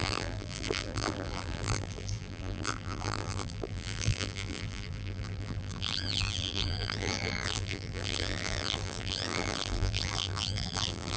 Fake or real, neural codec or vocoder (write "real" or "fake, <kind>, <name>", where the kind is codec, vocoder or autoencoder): fake, vocoder, BigVGAN v2